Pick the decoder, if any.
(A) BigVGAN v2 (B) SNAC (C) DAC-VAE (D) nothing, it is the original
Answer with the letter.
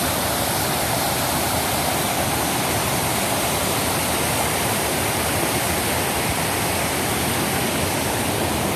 A